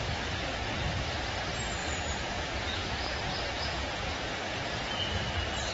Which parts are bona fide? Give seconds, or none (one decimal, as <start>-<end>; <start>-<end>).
0.0-1.8; 4.9-5.7